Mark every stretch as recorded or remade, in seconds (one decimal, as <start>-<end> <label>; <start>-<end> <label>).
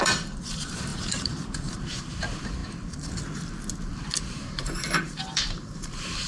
0.0-2.6 remade; 2.6-4.2 recorded; 4.2-6.3 remade